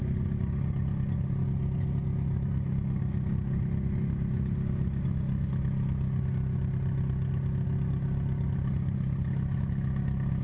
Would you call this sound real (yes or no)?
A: yes